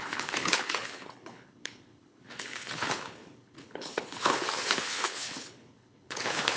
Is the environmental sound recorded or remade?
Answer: remade